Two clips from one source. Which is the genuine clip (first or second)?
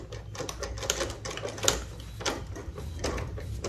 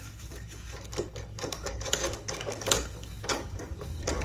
first